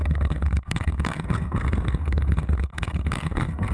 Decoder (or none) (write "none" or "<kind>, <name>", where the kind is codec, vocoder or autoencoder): codec, SNAC